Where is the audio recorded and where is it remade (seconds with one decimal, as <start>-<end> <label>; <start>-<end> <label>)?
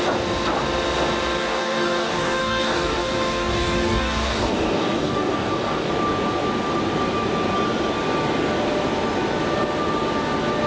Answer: 0.0-1.4 recorded; 1.4-5.9 remade; 5.9-10.7 recorded